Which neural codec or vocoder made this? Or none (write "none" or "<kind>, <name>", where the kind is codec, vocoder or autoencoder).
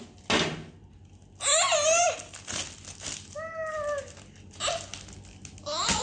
none